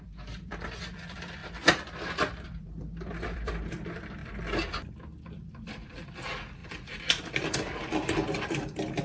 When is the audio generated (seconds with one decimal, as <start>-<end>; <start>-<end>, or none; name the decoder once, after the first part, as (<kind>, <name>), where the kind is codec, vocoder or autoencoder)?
0.0-1.4 (vocoder, BigVGAN v2); 2.3-4.2; 5.3-9.0

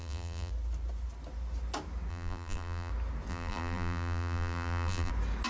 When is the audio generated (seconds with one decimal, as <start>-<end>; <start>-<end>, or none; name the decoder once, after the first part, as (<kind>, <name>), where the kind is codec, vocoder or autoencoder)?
0.0-0.5 (vocoder, BigVGAN v2); 2.1-2.9; 3.3-5.1

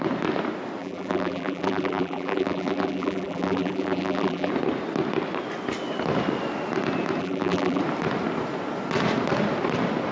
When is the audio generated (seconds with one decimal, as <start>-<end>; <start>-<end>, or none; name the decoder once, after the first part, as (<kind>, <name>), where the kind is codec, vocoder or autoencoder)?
0.8-4.5 (vocoder, BigVGAN v2); 7.2-7.8

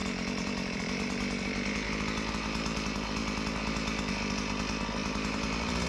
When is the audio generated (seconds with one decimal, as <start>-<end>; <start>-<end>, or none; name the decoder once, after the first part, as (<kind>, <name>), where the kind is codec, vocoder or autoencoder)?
0.0-2.3 (vocoder, BigVGAN v2); 5.0-5.9

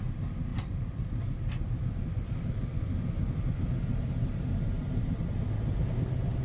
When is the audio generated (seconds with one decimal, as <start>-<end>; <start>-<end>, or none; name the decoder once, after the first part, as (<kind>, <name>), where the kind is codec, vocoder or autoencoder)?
0.5-3.3 (vocoder, BigVGAN v2); 5.8-6.4

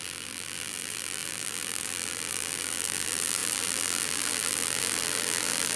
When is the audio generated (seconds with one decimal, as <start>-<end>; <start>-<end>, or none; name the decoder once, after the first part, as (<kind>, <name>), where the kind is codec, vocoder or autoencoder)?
0.0-5.8 (vocoder, BigVGAN v2)